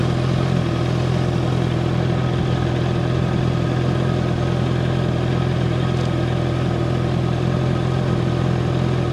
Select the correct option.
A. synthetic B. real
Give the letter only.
B